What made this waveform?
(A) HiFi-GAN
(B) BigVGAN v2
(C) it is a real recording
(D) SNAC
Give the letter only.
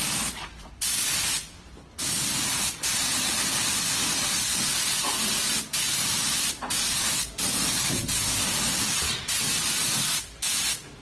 C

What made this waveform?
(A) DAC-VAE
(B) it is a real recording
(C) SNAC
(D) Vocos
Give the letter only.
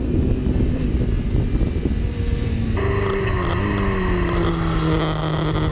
B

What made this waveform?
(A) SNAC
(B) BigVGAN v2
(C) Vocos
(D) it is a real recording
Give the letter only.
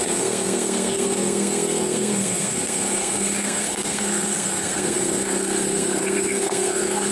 A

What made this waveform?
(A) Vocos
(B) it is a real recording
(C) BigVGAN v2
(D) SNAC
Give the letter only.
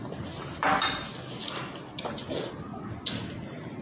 B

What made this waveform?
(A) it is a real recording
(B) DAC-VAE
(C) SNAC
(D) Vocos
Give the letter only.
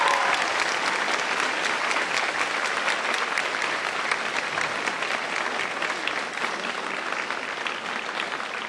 A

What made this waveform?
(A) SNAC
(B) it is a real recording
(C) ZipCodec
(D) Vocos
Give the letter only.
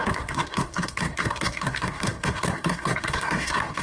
A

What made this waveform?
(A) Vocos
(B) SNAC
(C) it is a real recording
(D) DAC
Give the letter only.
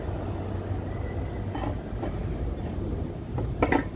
C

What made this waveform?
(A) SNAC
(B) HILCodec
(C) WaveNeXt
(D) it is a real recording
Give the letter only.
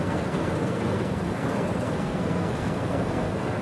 A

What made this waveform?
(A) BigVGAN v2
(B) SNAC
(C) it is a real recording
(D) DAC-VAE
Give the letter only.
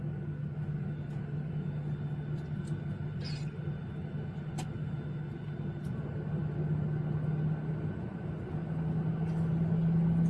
C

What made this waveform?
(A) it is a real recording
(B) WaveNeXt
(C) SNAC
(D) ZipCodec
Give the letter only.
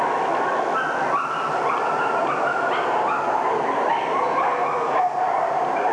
A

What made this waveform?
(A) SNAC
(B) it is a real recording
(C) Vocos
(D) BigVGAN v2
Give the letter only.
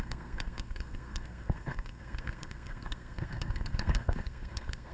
A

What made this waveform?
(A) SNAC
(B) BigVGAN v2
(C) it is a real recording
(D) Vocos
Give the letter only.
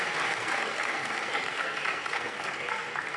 A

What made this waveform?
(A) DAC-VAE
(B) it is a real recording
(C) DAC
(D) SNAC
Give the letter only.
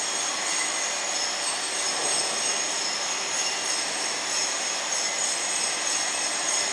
B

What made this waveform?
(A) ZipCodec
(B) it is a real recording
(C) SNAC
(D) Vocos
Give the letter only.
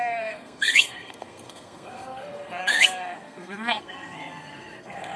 C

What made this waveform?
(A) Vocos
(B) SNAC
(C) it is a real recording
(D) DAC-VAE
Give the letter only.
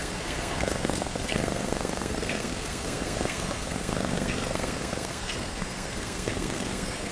B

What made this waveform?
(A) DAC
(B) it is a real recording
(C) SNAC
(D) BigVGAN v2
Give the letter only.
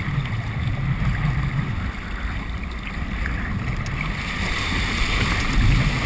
B